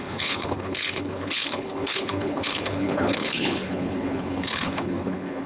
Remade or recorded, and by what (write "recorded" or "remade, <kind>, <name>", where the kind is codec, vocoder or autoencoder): remade, codec, HILCodec